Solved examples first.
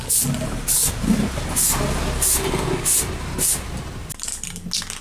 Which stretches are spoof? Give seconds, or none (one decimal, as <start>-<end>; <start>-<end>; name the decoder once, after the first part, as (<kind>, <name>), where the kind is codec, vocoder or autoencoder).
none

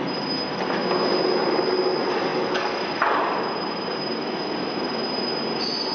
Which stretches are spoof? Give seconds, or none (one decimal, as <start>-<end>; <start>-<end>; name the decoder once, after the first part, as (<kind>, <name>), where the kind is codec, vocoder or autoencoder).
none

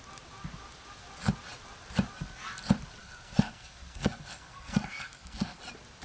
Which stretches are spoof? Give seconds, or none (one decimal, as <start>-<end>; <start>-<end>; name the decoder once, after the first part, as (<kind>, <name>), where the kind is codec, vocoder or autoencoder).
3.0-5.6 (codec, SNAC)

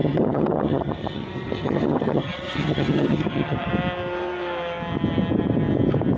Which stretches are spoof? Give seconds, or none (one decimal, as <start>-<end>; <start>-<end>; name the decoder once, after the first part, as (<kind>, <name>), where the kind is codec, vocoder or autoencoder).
0.0-3.7 (vocoder, HiFi-GAN)

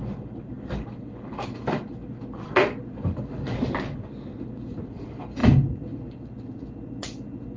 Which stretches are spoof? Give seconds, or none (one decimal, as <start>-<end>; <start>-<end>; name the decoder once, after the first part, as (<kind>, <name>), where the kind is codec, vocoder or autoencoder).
none